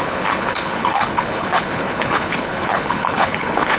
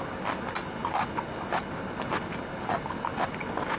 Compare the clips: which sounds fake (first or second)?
first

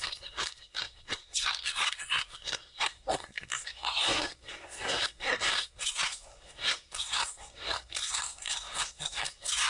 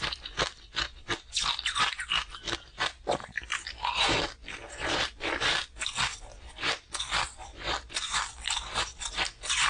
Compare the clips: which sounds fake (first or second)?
first